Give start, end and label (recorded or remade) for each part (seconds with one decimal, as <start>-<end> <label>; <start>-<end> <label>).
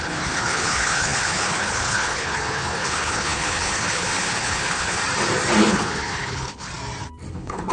0.0-5.0 remade; 5.0-5.6 recorded; 5.6-6.7 remade; 6.7-7.3 recorded; 7.3-7.7 remade